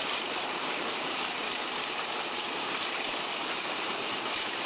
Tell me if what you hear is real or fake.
fake